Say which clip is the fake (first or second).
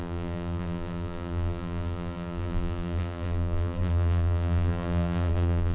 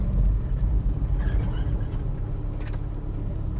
first